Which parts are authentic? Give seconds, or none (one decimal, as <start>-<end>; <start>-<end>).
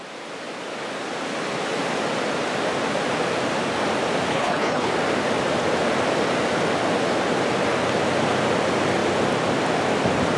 0.0-4.3; 4.9-10.4